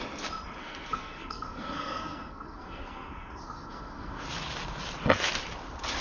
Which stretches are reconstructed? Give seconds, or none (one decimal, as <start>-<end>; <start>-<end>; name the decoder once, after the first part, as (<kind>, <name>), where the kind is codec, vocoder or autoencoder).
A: 0.6-4.2 (codec, SNAC)